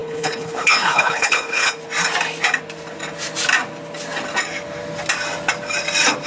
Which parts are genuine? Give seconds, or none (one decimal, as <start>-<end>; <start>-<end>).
1.7-6.3

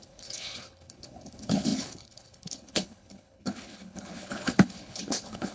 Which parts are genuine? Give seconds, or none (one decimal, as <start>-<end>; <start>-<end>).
none

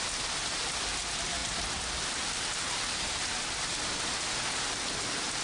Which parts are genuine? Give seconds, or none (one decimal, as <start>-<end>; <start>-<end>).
0.0-5.4

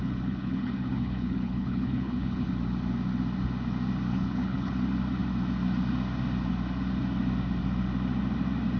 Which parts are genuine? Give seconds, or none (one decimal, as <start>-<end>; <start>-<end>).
2.5-4.1; 4.7-8.8